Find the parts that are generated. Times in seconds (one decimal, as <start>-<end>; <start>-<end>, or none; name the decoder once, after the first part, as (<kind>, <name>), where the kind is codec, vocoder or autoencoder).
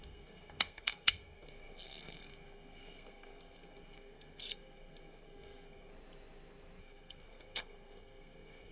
0.0-5.9 (codec, SNAC); 6.8-8.7